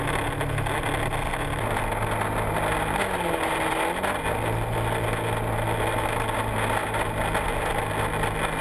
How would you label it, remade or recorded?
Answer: recorded